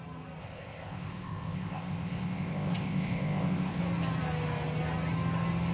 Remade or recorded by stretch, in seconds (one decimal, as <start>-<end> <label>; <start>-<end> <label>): 0.0-0.4 recorded; 0.4-3.8 remade; 3.8-5.7 recorded